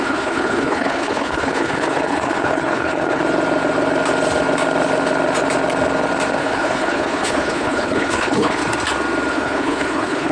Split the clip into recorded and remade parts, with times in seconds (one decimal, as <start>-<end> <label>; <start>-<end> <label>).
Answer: 0.0-3.2 remade; 3.2-6.4 recorded; 6.4-8.6 remade; 8.6-9.3 recorded; 9.3-10.3 remade